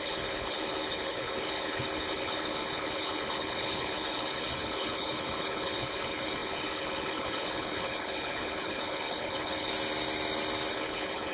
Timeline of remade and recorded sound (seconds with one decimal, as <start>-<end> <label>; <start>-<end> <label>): 0.0-9.7 remade; 9.7-10.7 recorded; 10.7-11.3 remade